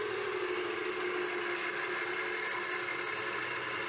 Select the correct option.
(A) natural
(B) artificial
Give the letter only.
A